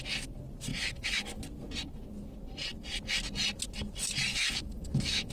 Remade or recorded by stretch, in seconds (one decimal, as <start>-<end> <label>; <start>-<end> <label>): 0.0-0.7 recorded; 0.7-1.4 remade; 1.4-4.3 recorded; 4.3-5.3 remade